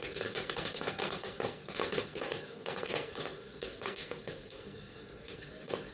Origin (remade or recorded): remade